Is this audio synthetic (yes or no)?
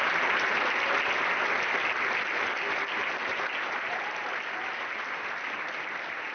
no